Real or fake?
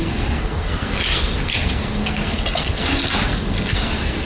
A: fake